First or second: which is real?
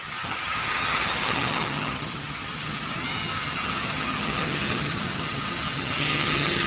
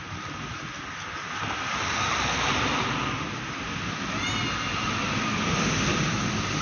second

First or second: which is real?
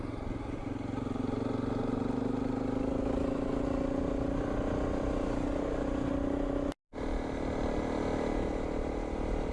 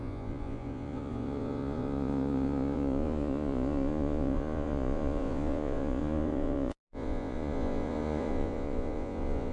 first